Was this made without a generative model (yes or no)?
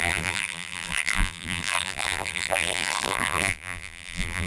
no